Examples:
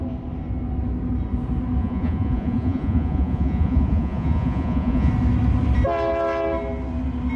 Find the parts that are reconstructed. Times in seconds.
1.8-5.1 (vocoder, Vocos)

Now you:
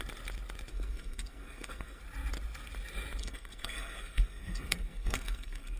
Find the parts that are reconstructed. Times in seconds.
0.7-2.0 (codec, SNAC); 3.2-5.8

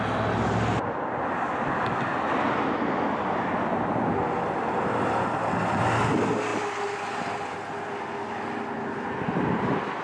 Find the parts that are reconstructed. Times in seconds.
none

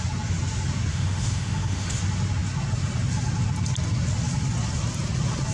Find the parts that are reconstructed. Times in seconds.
0.9-2.0 (autoencoder, DAC-VAE)

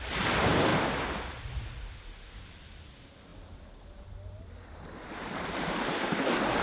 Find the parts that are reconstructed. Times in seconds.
none

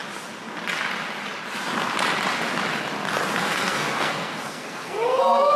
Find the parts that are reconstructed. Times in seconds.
3.4-5.6 (codec, SNAC)